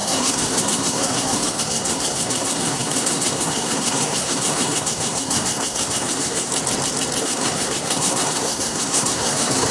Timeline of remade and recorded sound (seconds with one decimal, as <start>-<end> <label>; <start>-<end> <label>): 0.0-6.5 remade; 6.5-7.2 recorded; 7.2-9.7 remade